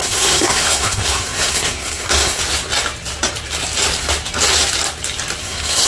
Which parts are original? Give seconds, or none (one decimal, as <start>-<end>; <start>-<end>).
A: 2.4-5.4